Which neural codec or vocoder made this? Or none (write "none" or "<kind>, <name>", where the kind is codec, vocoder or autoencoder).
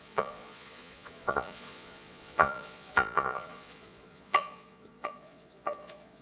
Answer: vocoder, Vocos